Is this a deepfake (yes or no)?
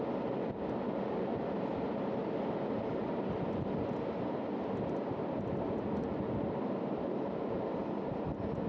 no